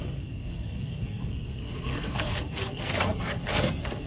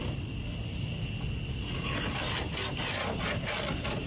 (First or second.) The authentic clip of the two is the second